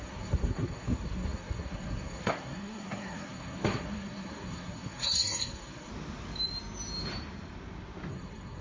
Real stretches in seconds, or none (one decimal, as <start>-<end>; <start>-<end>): 5.9-8.1